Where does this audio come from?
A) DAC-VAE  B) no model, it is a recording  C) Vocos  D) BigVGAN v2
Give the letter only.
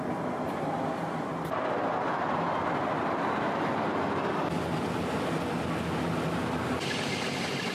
B